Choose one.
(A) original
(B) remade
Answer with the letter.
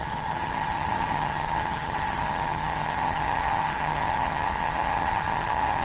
B